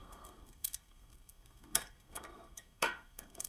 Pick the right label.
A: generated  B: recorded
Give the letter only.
A